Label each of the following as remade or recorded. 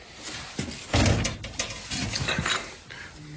recorded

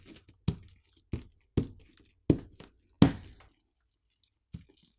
recorded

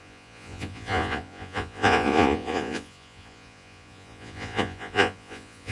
remade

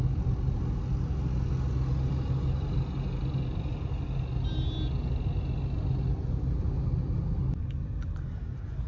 recorded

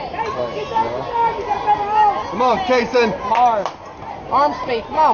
recorded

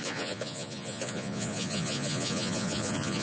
remade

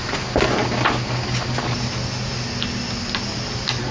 recorded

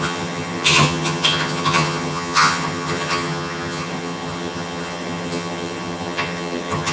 remade